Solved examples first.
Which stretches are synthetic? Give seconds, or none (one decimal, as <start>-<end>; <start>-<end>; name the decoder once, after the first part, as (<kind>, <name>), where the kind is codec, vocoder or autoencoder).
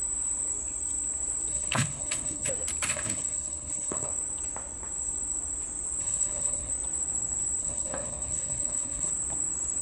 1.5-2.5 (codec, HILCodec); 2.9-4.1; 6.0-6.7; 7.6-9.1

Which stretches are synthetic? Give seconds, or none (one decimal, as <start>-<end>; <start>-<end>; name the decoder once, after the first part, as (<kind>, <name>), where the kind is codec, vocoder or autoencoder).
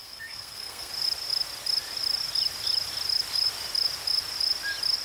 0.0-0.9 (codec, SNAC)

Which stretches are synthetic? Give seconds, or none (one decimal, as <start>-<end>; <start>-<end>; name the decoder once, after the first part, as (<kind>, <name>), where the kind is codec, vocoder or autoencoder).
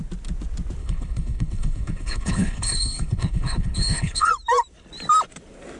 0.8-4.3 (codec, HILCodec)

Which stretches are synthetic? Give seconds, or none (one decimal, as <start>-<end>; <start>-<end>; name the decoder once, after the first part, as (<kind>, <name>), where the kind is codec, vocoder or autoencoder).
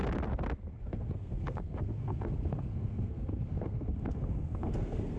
0.7-5.2 (codec, SNAC)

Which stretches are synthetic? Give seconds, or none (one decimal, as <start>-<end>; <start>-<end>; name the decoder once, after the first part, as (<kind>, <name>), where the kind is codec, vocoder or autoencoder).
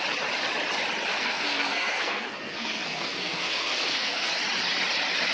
1.1-4.3 (codec, SNAC)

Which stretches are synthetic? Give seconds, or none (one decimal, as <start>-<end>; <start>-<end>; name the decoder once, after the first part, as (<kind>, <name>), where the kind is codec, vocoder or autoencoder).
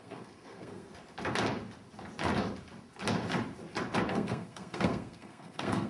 0.0-0.9 (codec, SNAC); 4.1-5.9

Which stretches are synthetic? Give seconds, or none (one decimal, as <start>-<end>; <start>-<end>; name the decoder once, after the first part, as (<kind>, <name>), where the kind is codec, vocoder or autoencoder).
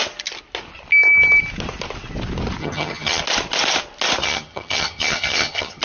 2.6-3.2 (vocoder, HiFi-GAN); 4.2-5.8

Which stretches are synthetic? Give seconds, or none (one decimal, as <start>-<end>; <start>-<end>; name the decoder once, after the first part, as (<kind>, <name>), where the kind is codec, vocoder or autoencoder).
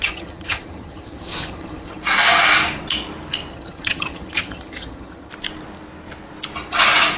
0.0-2.0 (vocoder, HiFi-GAN); 3.5-5.3